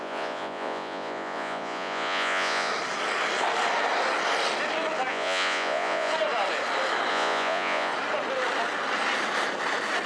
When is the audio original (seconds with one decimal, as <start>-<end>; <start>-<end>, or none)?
2.7-5.1; 6.1-7.1; 7.9-10.1